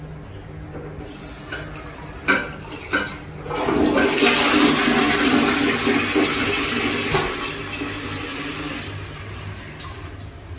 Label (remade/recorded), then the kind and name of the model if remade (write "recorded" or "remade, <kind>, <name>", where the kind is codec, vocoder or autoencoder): recorded